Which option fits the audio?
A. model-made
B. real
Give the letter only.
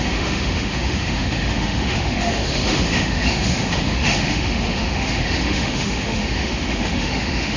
A